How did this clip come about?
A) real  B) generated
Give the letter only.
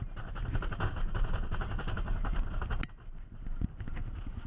A